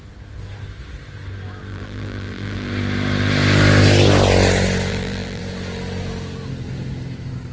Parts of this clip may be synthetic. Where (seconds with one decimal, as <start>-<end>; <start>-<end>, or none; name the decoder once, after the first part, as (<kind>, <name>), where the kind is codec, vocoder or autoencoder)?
1.7-2.7 (vocoder, BigVGAN v2); 4.9-5.4